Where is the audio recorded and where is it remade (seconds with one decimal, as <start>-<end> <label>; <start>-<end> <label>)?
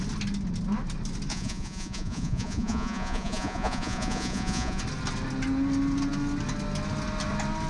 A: 0.0-1.3 recorded; 1.3-4.8 remade; 4.8-7.7 recorded